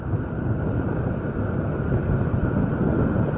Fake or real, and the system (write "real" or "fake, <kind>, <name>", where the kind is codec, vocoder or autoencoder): real